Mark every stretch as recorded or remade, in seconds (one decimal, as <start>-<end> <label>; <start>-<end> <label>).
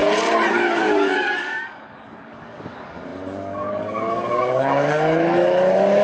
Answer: 0.0-0.5 recorded; 0.5-6.0 remade